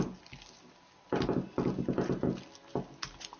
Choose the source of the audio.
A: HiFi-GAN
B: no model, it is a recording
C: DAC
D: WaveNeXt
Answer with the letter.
B